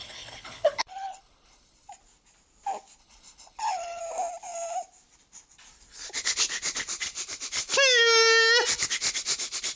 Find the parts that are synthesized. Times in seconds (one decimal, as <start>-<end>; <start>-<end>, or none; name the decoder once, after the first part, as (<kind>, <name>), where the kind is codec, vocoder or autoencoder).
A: 0.0-1.9 (codec, HILCodec); 3.0-4.0